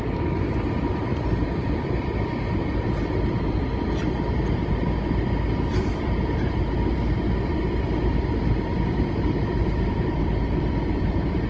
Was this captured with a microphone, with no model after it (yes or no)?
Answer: no